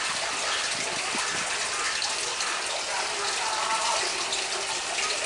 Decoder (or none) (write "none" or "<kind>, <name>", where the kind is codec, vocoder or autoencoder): none